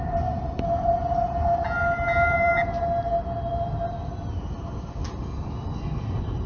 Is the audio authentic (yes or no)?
yes